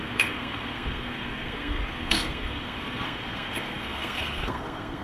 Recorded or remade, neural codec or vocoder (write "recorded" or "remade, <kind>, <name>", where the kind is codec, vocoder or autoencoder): remade, codec, SNAC